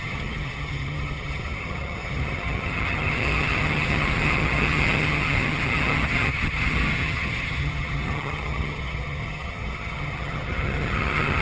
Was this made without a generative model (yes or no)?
no